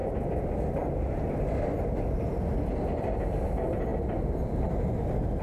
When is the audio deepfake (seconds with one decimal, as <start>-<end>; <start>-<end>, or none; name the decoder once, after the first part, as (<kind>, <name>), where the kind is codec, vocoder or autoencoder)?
none